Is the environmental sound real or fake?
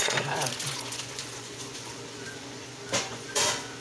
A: fake